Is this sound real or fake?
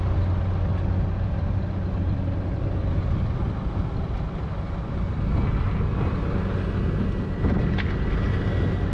real